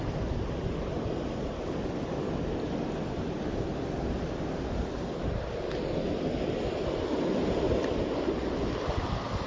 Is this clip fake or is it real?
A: real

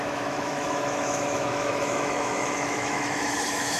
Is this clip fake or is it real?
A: fake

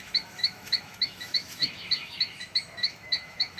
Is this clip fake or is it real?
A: fake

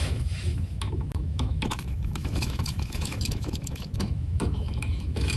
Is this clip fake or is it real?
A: fake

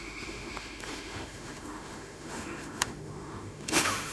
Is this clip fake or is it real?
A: fake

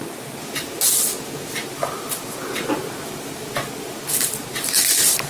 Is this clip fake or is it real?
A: real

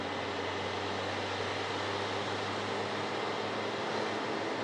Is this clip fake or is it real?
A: real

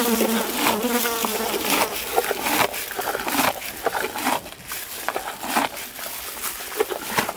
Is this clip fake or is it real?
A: real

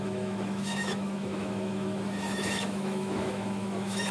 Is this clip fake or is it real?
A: fake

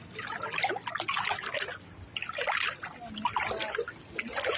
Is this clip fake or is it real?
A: real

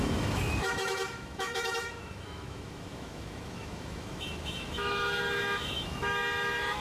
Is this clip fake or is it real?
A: fake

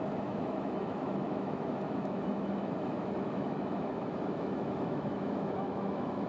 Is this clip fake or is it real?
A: fake